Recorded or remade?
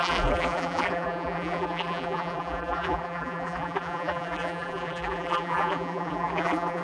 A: remade